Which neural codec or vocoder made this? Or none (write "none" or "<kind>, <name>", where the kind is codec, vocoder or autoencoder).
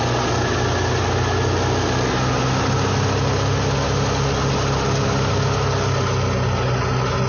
none